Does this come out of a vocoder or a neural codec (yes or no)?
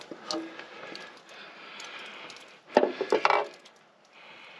no